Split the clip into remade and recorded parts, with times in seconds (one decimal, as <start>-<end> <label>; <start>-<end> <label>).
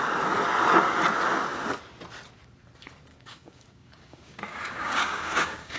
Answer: 0.0-3.1 recorded; 3.1-5.8 remade